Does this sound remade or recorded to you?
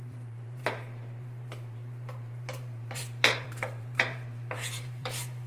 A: remade